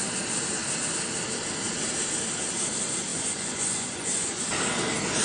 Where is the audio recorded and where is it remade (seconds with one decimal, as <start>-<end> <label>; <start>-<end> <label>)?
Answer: 0.0-3.1 recorded; 3.1-4.4 remade; 4.4-5.2 recorded

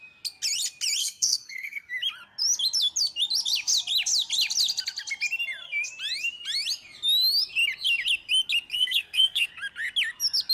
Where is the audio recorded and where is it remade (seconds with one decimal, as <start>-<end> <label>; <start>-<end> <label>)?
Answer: 0.0-1.0 recorded; 1.0-1.9 remade; 1.9-8.7 recorded; 8.7-9.5 remade; 9.5-10.5 recorded

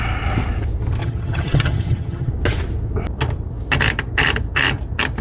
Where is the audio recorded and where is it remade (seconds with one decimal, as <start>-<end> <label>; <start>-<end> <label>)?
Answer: 0.0-1.0 recorded; 1.0-2.3 remade; 2.3-5.2 recorded